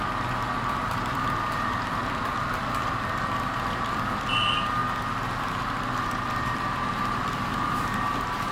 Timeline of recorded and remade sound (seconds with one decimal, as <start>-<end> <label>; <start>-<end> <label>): 0.0-4.8 remade; 4.8-6.3 recorded; 6.3-8.5 remade